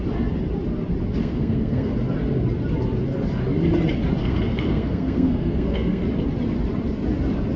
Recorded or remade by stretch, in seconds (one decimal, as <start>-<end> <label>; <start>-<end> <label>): 0.0-1.2 recorded; 1.2-1.9 remade; 1.9-4.2 recorded; 4.2-6.0 remade; 6.0-7.6 recorded